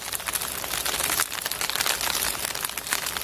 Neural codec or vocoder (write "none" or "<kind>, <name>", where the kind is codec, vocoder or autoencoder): none